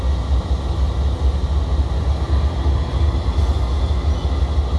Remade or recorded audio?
recorded